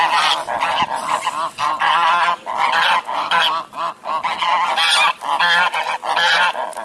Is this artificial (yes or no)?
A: no